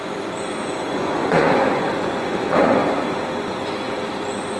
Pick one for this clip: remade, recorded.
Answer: remade